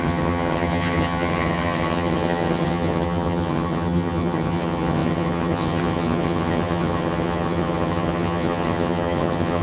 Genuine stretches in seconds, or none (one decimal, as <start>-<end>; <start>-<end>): none